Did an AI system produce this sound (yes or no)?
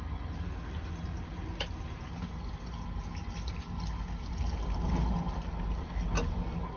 no